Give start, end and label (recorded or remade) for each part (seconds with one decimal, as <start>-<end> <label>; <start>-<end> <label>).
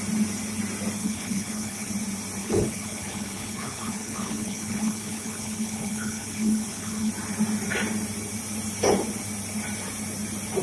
0.0-1.0 recorded; 1.0-1.9 remade; 1.9-2.4 recorded; 2.4-7.1 remade; 7.1-10.6 recorded